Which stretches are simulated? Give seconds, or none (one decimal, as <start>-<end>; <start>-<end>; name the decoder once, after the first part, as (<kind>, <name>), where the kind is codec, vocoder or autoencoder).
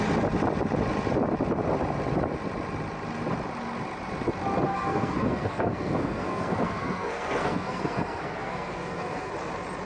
4.7-9.3 (codec, SNAC)